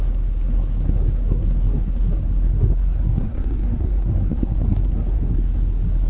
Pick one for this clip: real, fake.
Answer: fake